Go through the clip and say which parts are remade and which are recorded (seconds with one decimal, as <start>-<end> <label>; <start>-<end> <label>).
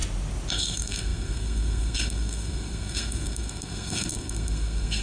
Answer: 0.0-0.5 recorded; 0.5-5.0 remade